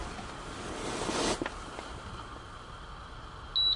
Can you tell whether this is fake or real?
real